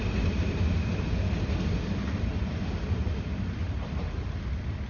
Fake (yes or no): no